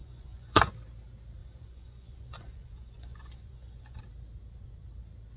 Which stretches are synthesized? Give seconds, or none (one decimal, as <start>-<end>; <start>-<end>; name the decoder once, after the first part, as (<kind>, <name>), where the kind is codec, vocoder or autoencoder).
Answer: 0.0-0.7 (vocoder, Vocos); 1.4-4.0